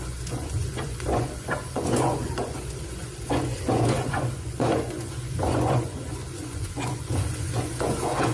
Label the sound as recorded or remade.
remade